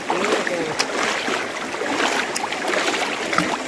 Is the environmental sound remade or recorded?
recorded